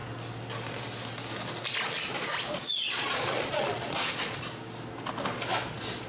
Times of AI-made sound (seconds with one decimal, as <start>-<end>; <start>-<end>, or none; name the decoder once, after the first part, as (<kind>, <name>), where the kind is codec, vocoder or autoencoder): 2.5-4.4 (vocoder, Vocos)